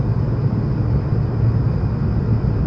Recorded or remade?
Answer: recorded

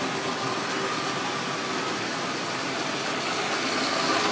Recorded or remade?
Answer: recorded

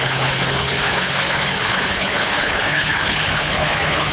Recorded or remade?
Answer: remade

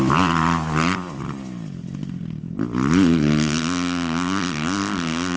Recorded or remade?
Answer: recorded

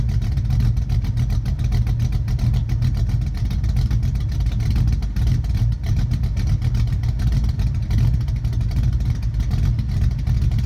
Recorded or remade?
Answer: recorded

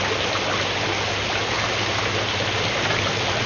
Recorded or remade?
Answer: recorded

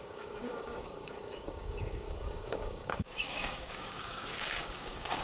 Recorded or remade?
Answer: remade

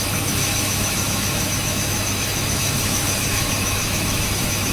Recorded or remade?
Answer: remade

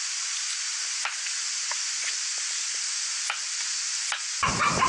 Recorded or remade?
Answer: recorded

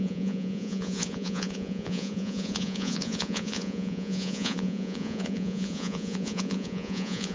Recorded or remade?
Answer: remade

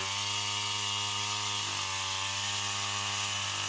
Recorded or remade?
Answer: recorded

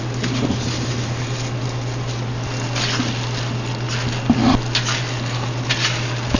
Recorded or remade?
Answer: recorded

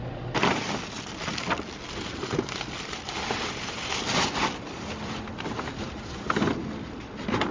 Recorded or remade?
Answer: recorded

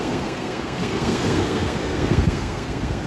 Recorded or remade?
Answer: remade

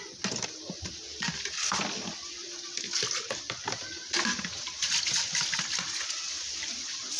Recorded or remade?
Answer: recorded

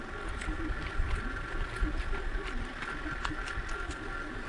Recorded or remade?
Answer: recorded